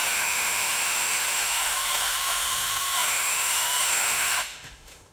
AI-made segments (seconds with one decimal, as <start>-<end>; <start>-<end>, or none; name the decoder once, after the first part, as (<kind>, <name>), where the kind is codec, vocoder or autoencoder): 0.0-5.1 (autoencoder, DAC-VAE)